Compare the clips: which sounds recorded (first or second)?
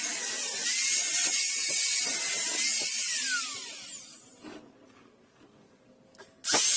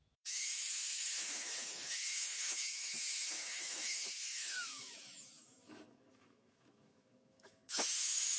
first